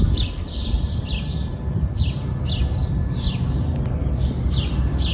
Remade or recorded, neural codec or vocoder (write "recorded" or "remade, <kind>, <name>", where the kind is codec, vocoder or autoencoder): recorded